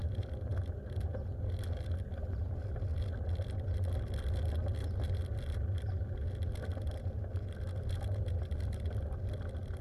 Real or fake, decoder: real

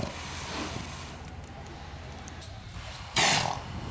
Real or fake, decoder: fake, vocoder, BigVGAN v2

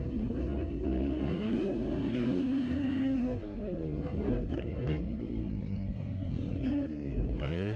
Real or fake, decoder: fake, codec, SNAC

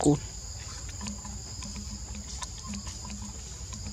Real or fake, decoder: real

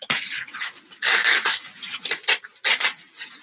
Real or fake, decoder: real